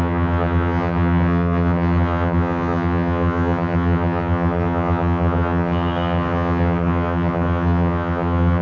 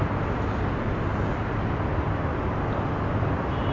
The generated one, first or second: first